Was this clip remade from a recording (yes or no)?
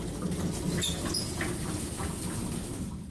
no